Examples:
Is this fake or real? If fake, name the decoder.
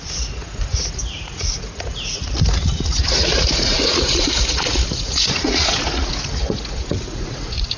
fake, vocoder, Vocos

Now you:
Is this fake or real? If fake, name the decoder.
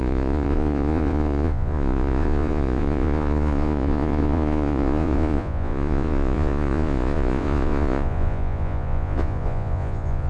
fake, vocoder, Vocos